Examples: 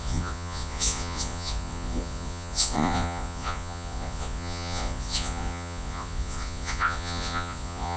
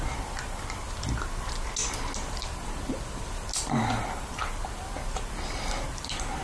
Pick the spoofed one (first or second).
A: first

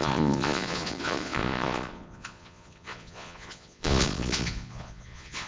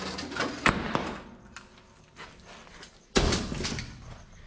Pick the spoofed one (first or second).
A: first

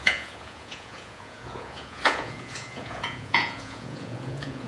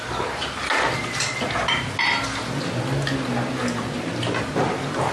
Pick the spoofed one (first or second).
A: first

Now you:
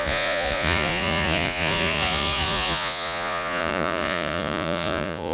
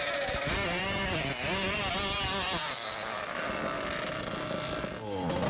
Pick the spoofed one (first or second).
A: first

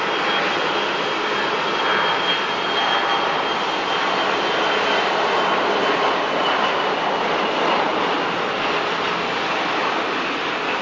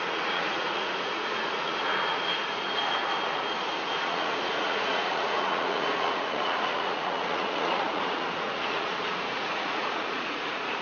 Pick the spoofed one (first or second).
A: second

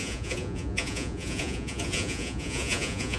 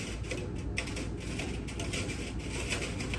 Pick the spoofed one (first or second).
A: first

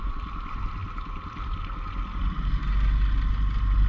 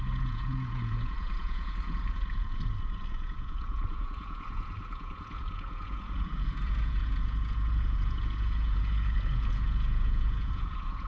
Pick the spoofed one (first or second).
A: second